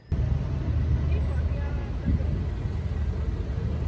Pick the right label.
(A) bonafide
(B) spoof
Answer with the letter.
A